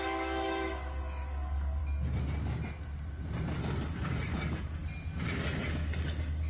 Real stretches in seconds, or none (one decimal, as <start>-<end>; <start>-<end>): 1.8-3.6; 4.8-5.6